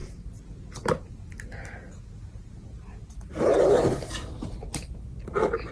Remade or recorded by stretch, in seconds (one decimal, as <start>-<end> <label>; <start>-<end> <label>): 0.0-5.7 recorded